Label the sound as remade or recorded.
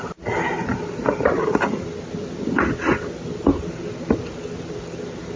recorded